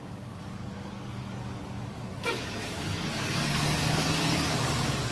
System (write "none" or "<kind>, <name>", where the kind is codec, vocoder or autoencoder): codec, DAC